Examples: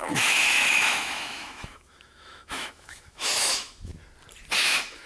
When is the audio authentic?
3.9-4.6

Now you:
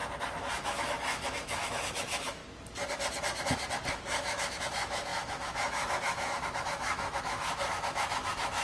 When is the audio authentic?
0.0-0.5; 2.4-3.9

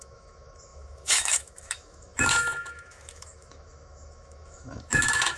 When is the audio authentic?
none